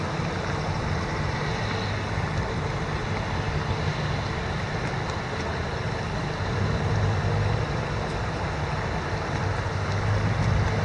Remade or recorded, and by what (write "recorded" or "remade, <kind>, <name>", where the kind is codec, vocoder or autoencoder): recorded